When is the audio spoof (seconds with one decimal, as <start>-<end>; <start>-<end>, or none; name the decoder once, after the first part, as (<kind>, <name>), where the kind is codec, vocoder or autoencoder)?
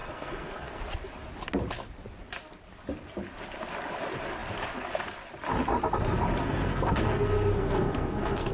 0.0-0.8 (codec, SNAC); 6.4-8.5